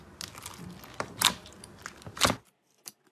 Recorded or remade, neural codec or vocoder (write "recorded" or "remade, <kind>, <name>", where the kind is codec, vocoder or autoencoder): recorded